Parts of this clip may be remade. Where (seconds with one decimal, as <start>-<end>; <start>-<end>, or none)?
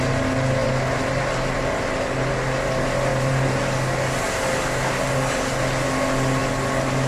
3.1-3.6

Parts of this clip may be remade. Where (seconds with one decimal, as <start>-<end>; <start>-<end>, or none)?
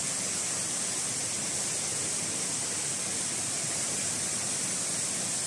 none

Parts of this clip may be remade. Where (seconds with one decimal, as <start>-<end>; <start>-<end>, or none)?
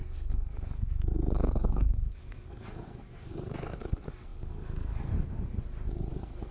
0.0-5.5; 6.1-6.5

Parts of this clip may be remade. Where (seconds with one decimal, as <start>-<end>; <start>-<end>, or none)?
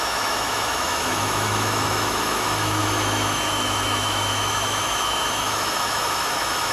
0.0-6.7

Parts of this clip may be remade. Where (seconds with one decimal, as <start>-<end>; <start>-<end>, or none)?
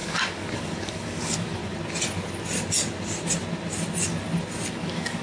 0.0-1.6; 4.7-5.2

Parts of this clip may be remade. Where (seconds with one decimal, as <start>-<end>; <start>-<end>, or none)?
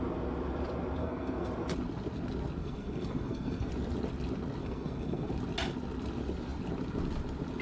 1.0-1.5; 2.6-3.7; 4.6-5.3